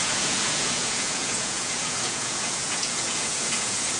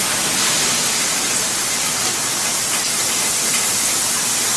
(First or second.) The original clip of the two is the second